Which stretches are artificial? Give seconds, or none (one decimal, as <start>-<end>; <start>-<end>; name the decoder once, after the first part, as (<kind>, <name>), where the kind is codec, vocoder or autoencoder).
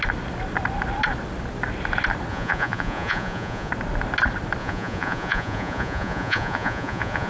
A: 2.3-3.7 (vocoder, Vocos); 4.6-7.3